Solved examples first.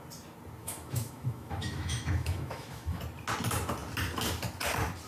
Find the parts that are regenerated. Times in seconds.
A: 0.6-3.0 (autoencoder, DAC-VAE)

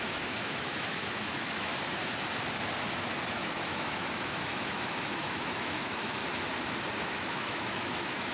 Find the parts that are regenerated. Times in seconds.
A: 0.0-1.7 (autoencoder, DAC-VAE); 3.3-6.2; 7.0-8.3